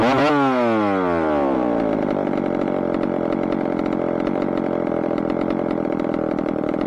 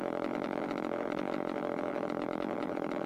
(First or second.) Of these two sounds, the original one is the first